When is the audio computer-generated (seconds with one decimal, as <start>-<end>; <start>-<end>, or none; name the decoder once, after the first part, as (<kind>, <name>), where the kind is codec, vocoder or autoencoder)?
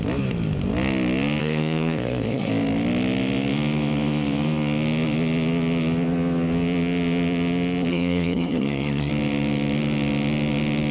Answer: 1.4-2.5 (codec, SNAC); 7.9-9.1